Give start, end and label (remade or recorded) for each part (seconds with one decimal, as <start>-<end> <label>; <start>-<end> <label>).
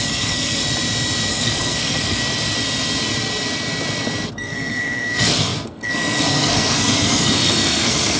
0.0-0.6 remade; 0.6-1.3 recorded; 1.3-2.2 remade; 2.2-4.3 recorded; 4.3-8.2 remade